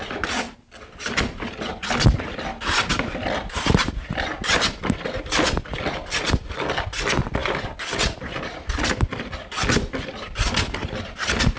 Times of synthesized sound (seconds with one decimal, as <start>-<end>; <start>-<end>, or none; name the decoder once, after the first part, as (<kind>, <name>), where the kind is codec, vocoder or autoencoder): none